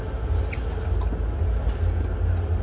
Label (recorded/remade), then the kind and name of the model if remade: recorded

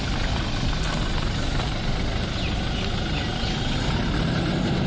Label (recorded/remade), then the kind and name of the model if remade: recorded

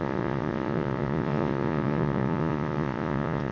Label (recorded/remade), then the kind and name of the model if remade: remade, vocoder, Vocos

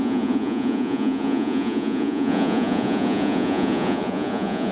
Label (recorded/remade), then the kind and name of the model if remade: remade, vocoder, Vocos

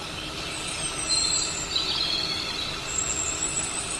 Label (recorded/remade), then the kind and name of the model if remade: recorded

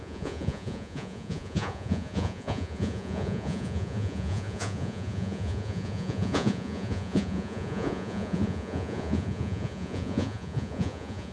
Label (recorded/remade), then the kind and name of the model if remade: remade, vocoder, Vocos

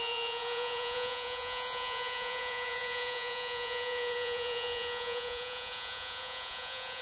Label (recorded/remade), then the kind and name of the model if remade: remade, vocoder, Vocos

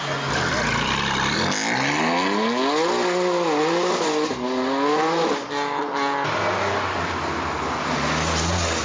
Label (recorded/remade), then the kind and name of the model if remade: recorded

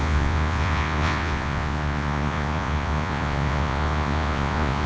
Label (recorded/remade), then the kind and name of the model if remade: remade, vocoder, Vocos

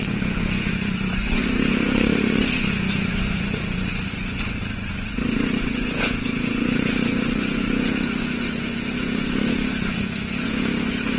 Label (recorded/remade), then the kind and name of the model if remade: remade, vocoder, Vocos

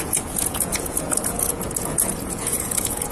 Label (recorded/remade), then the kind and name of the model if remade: remade, vocoder, Vocos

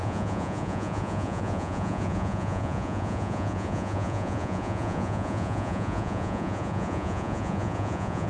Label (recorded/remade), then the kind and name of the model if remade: remade, vocoder, Vocos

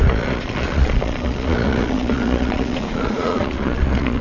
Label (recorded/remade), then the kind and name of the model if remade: remade, vocoder, Vocos